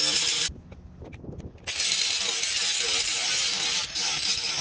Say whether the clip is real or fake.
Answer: real